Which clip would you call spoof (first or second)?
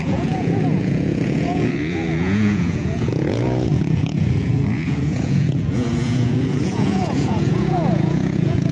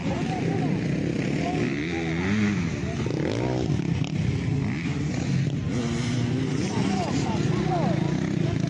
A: first